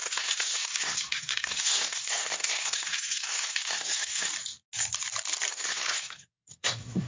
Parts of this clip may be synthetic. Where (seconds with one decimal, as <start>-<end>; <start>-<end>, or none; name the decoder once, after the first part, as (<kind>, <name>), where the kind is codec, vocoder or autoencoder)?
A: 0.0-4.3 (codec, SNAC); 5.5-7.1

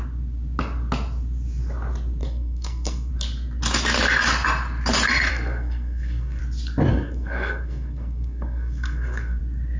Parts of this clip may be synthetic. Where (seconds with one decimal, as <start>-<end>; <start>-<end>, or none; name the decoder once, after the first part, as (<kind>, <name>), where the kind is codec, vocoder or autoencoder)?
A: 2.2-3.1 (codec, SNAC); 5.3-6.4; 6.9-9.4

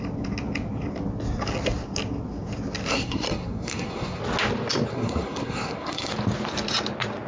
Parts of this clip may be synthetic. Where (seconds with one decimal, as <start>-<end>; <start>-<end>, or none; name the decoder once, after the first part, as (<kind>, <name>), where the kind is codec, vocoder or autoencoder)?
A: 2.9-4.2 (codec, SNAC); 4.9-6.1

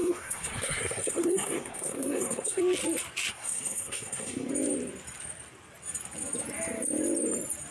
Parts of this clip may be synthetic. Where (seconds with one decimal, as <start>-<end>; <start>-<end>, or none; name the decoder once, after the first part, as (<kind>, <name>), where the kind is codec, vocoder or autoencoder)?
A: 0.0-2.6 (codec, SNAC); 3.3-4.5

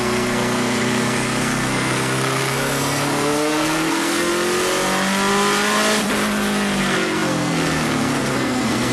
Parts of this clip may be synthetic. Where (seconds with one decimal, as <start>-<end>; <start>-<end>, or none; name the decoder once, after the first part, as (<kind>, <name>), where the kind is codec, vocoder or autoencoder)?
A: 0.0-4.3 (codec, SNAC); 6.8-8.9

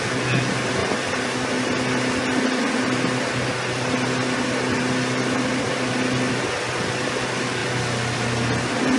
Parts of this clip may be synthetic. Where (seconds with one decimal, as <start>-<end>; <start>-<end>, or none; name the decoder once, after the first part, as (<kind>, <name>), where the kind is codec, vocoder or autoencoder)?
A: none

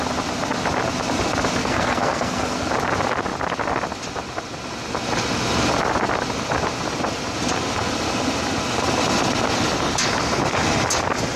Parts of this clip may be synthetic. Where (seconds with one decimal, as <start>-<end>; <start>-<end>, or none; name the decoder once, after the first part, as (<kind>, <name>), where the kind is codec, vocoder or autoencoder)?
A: 1.6-2.7 (codec, SNAC)